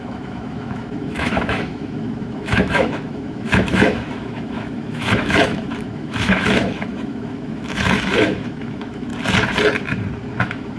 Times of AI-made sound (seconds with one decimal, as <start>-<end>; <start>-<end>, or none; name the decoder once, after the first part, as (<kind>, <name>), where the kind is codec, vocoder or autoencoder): 0.0-9.1 (autoencoder, DAC-VAE); 10.4-10.8